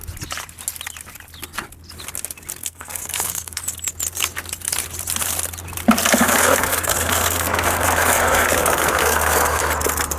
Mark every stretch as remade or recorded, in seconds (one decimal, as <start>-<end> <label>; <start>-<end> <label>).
0.0-2.6 recorded; 2.6-3.6 remade; 3.6-6.2 recorded; 6.2-9.6 remade; 9.6-10.2 recorded